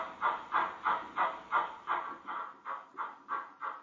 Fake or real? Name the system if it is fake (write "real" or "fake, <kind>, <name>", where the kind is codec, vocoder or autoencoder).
real